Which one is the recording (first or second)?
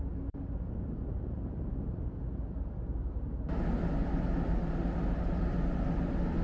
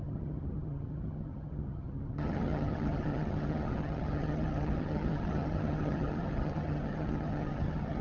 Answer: first